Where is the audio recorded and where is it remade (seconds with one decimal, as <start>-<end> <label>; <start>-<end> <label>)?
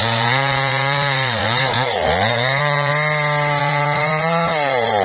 0.0-2.9 remade; 2.9-3.6 recorded; 3.6-5.0 remade